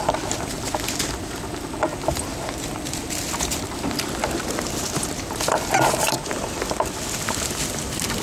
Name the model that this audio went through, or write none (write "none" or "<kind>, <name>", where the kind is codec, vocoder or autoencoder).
none